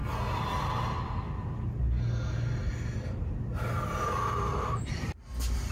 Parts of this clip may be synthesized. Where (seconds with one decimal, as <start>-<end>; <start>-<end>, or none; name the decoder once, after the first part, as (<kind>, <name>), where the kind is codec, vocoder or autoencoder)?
none